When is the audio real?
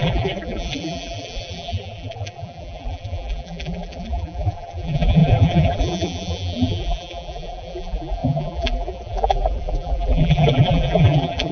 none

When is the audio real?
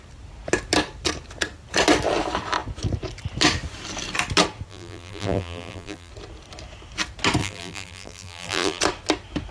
0.0-4.7; 6.1-7.4; 8.8-9.5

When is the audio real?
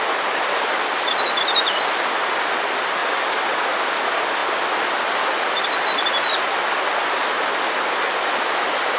0.0-3.0; 3.6-9.0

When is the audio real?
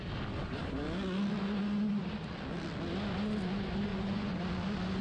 0.0-3.9; 4.4-5.0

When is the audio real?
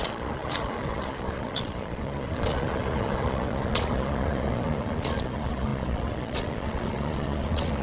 none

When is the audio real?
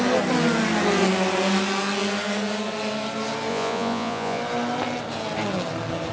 0.0-3.5; 4.4-6.1